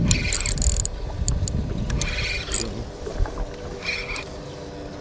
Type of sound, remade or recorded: recorded